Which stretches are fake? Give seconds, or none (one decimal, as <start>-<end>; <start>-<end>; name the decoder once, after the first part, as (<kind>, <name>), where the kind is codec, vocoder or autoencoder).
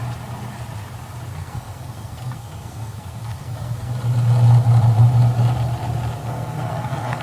1.3-3.9 (codec, SNAC); 6.2-7.2